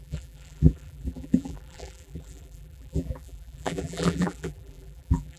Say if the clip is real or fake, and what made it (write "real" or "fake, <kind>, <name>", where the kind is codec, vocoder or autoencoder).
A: fake, vocoder, BigVGAN v2